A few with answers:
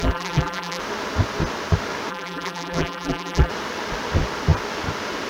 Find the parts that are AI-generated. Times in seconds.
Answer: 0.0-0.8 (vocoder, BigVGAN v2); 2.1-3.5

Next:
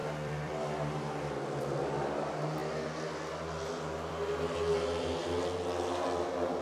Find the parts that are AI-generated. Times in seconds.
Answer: 0.0-1.6 (vocoder, BigVGAN v2)

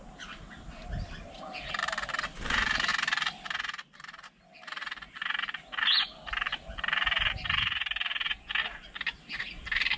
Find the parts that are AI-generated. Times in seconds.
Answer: none

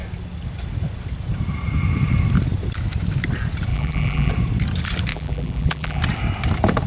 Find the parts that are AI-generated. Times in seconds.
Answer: 3.7-4.3 (vocoder, BigVGAN v2); 5.1-6.0

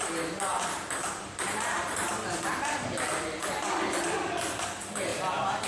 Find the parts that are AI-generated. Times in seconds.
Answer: 0.5-2.6 (vocoder, BigVGAN v2); 5.1-5.7

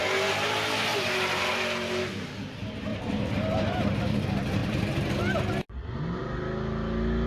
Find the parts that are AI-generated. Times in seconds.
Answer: 0.9-1.5 (vocoder, BigVGAN v2); 2.9-4.0; 4.6-5.2